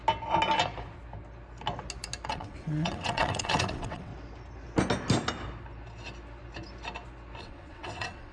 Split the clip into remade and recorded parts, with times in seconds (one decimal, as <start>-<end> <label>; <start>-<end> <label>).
0.0-2.3 recorded; 2.3-4.1 remade; 4.1-7.4 recorded; 7.4-8.3 remade